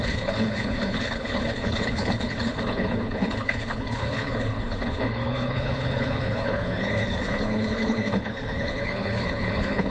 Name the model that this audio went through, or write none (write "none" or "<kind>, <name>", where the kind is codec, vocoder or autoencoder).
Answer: codec, HILCodec